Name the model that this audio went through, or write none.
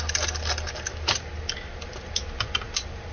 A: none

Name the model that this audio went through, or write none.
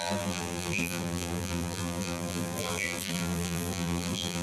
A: vocoder, BigVGAN v2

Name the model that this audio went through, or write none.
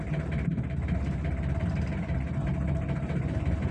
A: vocoder, BigVGAN v2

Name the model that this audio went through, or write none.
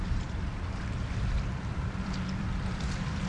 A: vocoder, BigVGAN v2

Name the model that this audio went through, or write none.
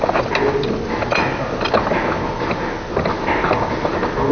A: none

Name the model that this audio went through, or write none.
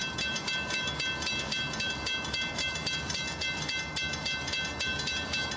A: none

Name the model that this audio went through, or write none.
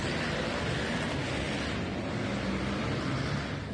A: none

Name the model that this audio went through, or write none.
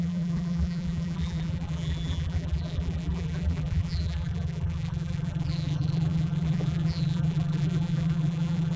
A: vocoder, BigVGAN v2